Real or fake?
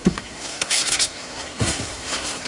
fake